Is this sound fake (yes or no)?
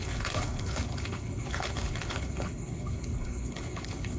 yes